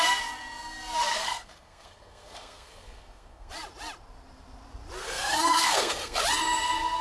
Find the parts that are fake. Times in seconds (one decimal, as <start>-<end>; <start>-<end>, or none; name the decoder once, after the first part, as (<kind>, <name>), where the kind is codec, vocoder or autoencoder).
1.1-3.5 (codec, SNAC); 5.0-6.2